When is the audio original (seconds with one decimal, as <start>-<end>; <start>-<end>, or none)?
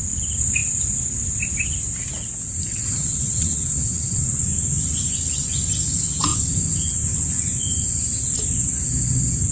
0.0-2.7; 4.4-9.5